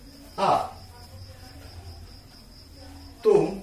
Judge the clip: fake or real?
real